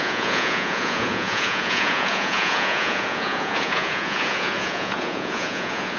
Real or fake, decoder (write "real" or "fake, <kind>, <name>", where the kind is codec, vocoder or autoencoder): fake, vocoder, Vocos